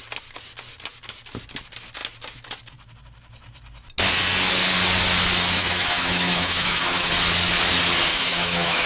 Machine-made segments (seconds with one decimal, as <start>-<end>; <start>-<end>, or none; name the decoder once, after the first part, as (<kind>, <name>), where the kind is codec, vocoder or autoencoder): 5.6-7.1 (autoencoder, DAC-VAE); 8.1-8.9